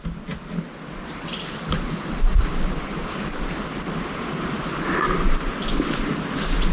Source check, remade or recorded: recorded